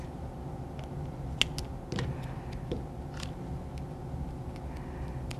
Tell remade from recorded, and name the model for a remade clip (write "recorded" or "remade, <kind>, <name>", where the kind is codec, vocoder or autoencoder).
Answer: recorded